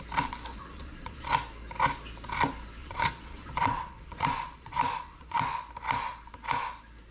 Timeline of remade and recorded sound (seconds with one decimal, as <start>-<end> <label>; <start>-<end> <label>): 0.0-0.5 recorded; 0.5-1.3 remade; 1.3-2.8 recorded; 2.8-5.7 remade; 5.7-7.1 recorded